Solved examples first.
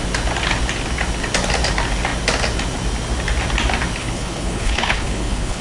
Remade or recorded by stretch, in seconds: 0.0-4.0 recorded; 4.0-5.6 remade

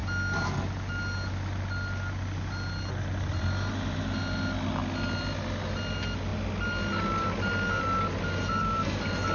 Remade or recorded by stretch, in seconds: 0.0-9.3 recorded

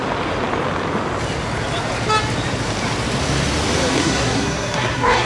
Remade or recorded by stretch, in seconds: 0.0-4.0 recorded; 4.0-5.3 remade

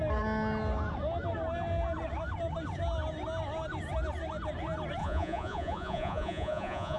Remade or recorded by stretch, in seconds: 0.0-5.0 recorded; 5.0-7.0 remade